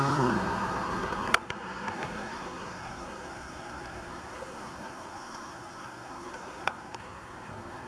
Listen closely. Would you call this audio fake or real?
fake